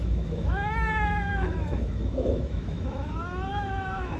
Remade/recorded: remade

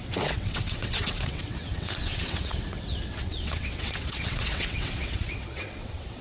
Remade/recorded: remade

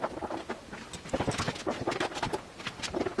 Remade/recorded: recorded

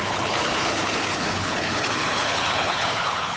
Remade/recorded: remade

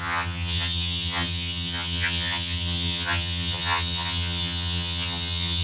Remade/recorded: remade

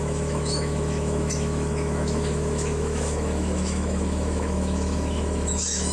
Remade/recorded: remade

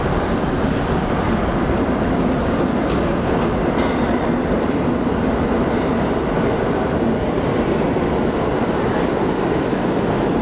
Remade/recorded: recorded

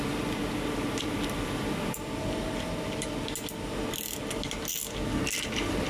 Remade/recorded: recorded